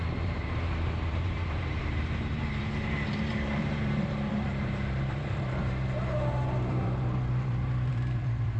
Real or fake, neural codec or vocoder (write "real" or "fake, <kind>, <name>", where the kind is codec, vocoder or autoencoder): fake, vocoder, BigVGAN v2